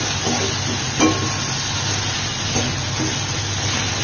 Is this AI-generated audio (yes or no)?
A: no